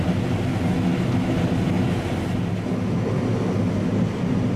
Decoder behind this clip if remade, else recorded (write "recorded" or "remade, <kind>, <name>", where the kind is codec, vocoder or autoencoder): recorded